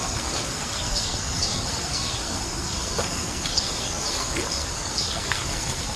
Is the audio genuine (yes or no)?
no